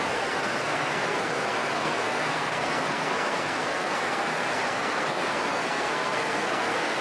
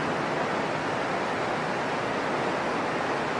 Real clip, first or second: second